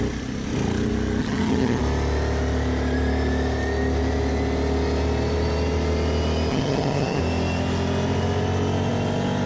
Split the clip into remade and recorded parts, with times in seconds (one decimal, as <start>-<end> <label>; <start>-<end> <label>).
0.0-1.2 recorded; 1.2-1.8 remade; 1.8-6.5 recorded; 6.5-7.2 remade; 7.2-9.5 recorded